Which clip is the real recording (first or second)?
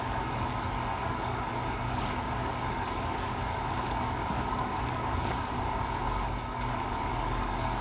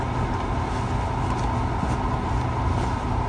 second